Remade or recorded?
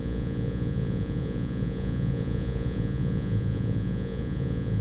remade